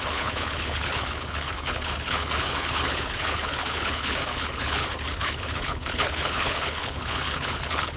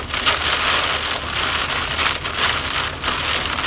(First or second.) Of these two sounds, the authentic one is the second